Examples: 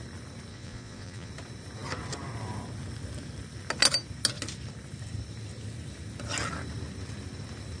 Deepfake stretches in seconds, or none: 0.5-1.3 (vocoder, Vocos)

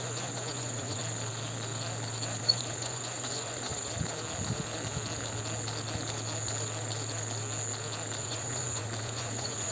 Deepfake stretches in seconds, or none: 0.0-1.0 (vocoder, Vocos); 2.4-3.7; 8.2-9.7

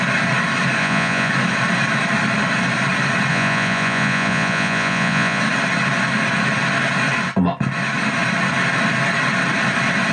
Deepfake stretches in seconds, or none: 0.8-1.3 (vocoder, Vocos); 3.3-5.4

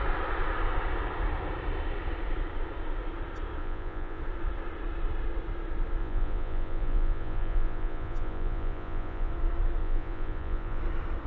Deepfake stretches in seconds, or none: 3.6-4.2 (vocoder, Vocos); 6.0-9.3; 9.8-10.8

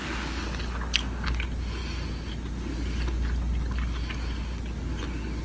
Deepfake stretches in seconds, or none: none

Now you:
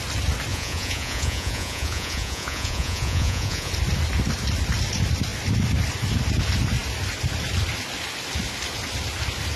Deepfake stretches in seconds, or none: 0.5-3.7 (vocoder, Vocos)

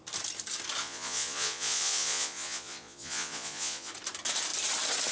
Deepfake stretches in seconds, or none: 0.8-3.9 (vocoder, Vocos)

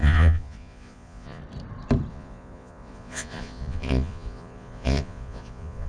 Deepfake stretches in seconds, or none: 0.0-1.4 (vocoder, Vocos); 2.1-5.9